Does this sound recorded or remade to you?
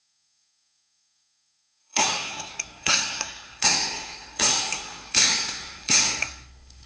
remade